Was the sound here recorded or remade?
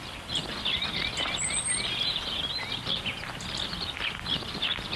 recorded